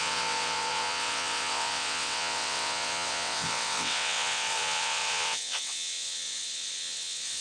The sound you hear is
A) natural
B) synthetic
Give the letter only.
B